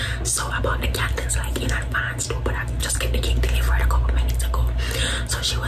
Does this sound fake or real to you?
real